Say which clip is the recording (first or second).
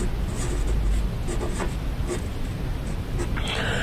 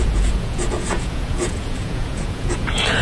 first